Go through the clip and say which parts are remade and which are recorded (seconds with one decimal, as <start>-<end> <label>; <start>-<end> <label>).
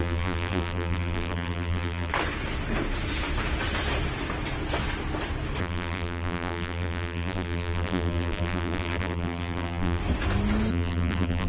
0.0-2.1 remade; 2.1-5.6 recorded; 5.6-10.0 remade; 10.0-10.7 recorded; 10.7-11.5 remade